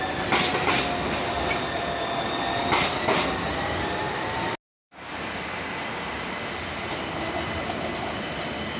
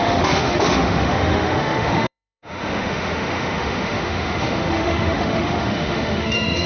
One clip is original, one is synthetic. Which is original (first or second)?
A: first